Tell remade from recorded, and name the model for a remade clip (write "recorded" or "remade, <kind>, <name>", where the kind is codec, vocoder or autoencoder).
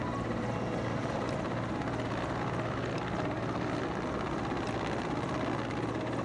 recorded